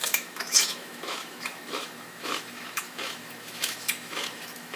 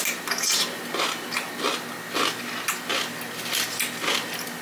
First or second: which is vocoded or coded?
first